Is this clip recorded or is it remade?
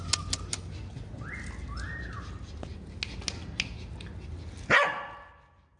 recorded